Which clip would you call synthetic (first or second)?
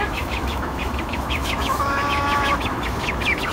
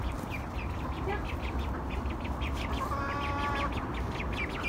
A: first